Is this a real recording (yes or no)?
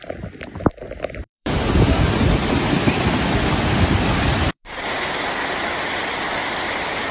no